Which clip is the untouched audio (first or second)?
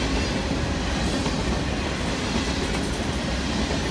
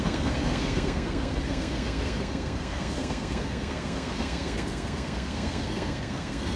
first